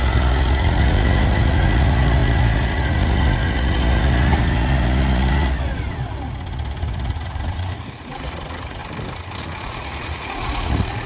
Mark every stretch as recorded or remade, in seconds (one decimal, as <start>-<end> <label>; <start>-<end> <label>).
0.0-8.8 remade; 8.8-9.4 recorded; 9.4-11.1 remade